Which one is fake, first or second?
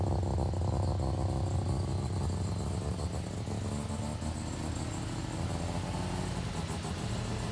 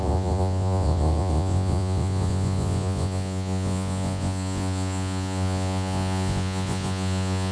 second